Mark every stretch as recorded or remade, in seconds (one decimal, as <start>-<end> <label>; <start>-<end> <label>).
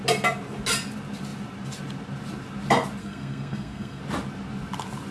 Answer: 0.0-3.0 recorded; 3.0-4.0 remade; 4.0-5.1 recorded